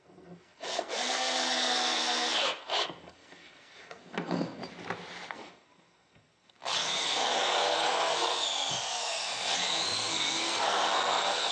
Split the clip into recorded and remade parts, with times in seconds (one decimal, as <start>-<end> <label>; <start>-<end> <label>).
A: 0.0-4.6 remade; 4.6-5.3 recorded; 5.3-11.5 remade